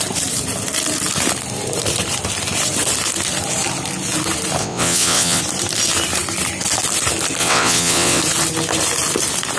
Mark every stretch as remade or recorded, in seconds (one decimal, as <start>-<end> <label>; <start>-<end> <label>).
0.0-4.6 recorded; 4.6-5.4 remade; 5.4-7.4 recorded; 7.4-8.2 remade; 8.2-9.6 recorded